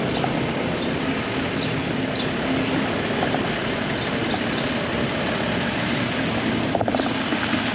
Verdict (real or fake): real